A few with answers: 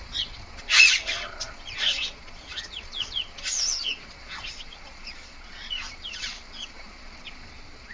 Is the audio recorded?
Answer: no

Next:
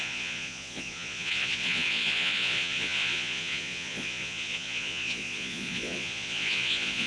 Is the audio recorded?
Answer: no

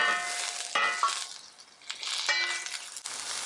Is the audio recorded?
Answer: yes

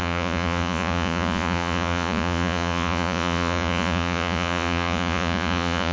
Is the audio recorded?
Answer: no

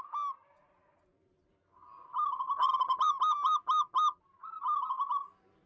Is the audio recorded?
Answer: yes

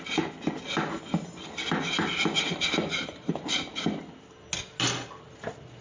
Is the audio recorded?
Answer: yes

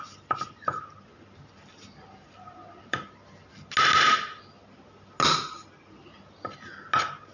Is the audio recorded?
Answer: yes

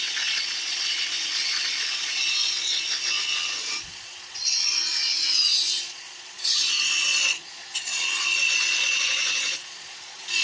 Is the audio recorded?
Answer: no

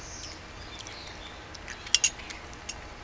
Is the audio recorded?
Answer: yes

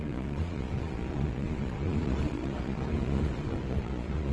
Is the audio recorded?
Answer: no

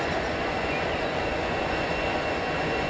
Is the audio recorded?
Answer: no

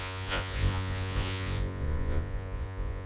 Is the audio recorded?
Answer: no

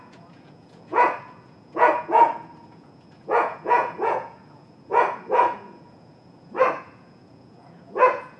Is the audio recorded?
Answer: no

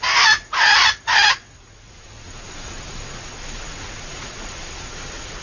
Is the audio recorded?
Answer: no